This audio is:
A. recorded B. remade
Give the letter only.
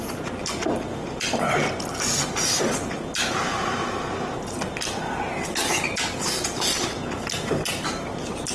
A